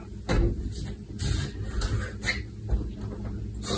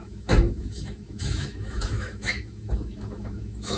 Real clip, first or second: first